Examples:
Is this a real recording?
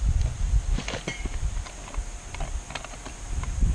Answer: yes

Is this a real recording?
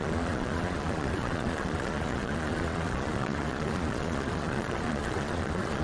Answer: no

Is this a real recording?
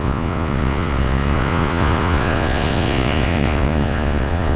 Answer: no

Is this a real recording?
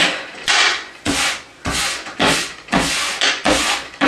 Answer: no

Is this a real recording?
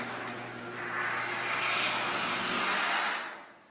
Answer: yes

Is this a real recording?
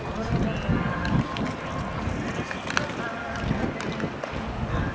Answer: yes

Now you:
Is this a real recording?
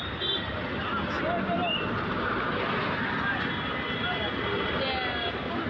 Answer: yes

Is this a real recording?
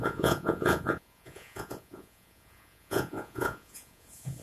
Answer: no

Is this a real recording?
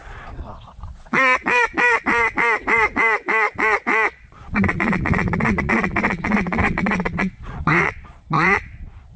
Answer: no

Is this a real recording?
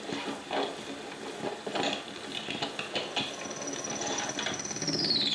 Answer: yes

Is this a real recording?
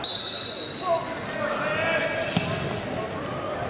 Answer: yes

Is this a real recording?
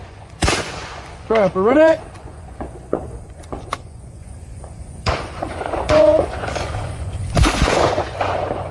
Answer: no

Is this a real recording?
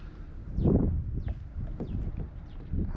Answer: yes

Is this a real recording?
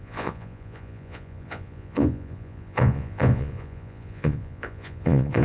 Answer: no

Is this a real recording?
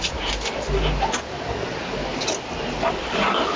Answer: yes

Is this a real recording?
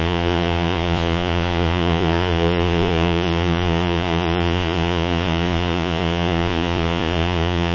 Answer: no